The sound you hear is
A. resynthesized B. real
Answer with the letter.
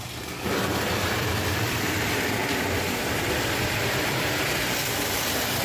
A